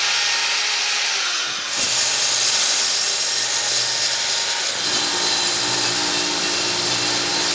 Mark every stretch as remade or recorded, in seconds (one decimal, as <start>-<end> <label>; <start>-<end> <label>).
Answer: 0.0-7.5 recorded